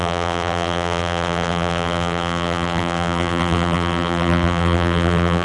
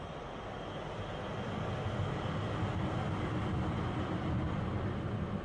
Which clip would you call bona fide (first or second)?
second